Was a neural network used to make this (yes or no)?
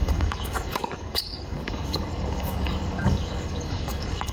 yes